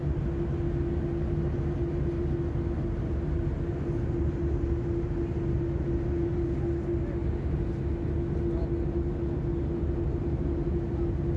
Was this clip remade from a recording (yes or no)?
no